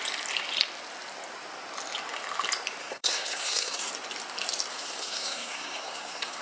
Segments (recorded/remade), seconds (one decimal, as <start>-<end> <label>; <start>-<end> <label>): 0.0-2.8 recorded; 2.8-3.9 remade; 3.9-4.7 recorded; 4.7-6.4 remade